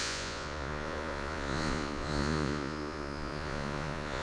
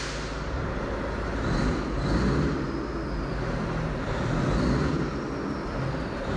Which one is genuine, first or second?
second